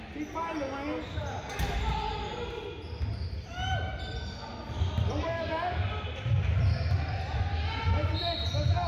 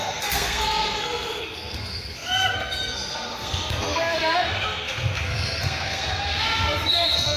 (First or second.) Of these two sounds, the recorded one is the first